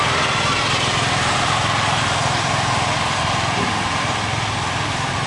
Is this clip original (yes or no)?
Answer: yes